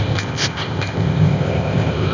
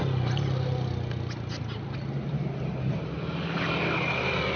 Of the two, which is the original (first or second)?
second